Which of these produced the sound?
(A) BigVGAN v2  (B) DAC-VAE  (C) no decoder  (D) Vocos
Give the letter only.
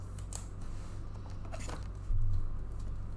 C